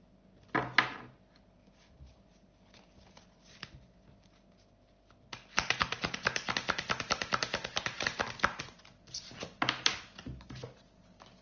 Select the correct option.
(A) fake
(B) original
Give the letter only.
B